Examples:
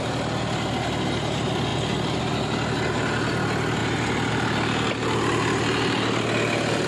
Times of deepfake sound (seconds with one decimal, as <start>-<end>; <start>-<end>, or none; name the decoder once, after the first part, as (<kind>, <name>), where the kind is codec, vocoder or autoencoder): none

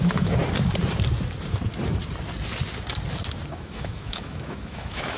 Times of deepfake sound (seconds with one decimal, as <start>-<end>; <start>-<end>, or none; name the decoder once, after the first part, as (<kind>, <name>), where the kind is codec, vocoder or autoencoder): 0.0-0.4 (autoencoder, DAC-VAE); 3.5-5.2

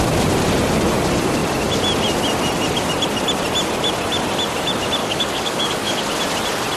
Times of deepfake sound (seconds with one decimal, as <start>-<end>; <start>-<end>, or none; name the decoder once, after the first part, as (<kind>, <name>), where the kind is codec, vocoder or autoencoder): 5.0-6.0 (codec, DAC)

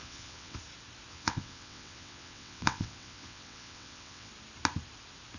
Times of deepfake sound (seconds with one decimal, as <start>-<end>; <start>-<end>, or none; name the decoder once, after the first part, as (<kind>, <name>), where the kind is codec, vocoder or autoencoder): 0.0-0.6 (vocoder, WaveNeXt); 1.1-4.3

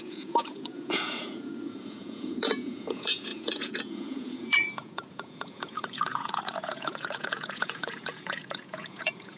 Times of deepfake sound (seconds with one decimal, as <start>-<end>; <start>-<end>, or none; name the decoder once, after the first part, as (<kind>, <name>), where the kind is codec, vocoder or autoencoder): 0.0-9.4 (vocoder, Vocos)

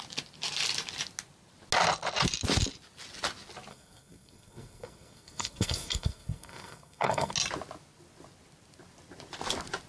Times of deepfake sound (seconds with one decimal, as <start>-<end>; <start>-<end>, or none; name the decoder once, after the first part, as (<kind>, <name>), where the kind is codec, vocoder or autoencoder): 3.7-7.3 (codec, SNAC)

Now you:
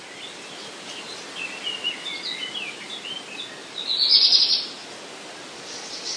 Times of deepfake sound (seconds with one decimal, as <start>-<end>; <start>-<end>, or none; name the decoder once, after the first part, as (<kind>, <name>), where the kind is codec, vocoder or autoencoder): none

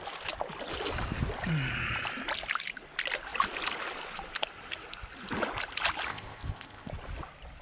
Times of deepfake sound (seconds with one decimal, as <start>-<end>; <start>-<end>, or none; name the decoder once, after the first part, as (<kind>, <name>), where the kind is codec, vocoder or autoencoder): 6.1-6.9 (codec, ZipCodec)